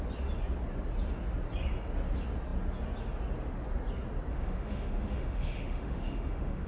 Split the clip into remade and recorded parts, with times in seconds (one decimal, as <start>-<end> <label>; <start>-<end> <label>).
0.0-4.3 recorded; 4.3-6.7 remade

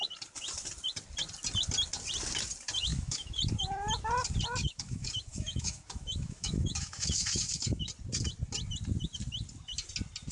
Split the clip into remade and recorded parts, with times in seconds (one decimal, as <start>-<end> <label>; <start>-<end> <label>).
0.0-2.9 recorded; 2.9-3.4 remade; 3.4-4.6 recorded; 4.6-7.9 remade; 7.9-10.3 recorded

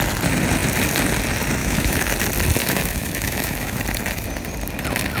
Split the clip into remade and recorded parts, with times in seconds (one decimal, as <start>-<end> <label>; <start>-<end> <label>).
0.0-1.6 recorded; 1.6-2.1 remade; 2.1-2.6 recorded; 2.6-3.8 remade; 3.8-5.2 recorded